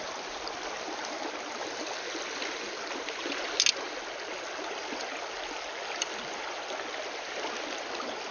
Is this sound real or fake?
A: real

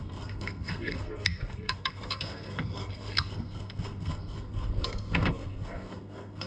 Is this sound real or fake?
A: fake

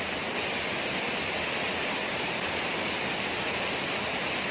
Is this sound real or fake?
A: real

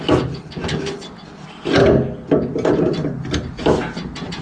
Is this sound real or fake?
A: real